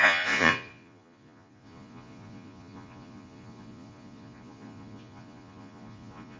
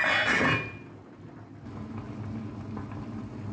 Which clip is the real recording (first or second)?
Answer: second